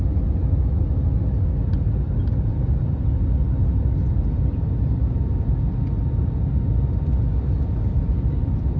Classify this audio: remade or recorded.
recorded